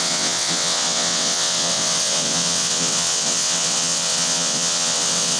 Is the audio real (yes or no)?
no